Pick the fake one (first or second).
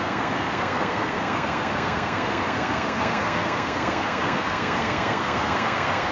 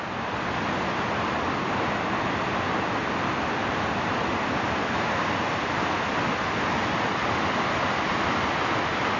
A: first